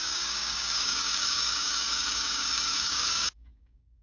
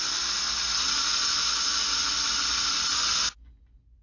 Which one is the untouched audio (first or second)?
second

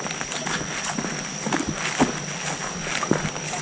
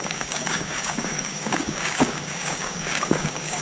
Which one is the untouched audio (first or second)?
first